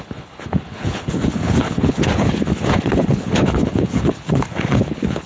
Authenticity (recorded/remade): remade